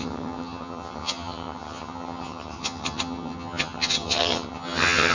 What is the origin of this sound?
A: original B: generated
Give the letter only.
B